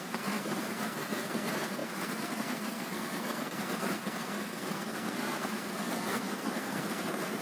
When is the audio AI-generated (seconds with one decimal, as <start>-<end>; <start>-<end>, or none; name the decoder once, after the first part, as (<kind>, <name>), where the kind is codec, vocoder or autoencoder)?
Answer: 0.0-7.4 (codec, SNAC)